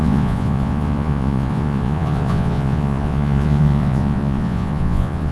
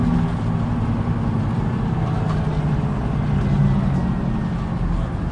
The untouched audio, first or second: second